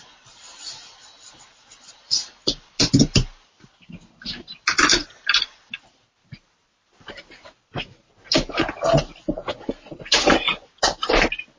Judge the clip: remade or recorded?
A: recorded